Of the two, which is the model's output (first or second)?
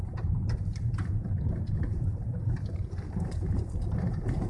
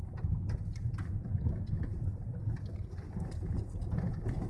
first